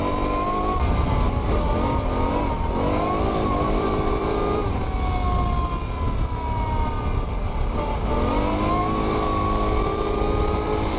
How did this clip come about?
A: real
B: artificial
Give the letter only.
A